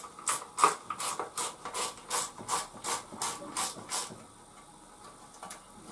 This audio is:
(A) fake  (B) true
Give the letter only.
B